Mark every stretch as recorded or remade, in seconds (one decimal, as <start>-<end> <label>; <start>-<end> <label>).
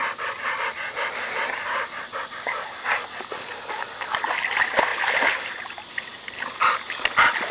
0.0-7.5 recorded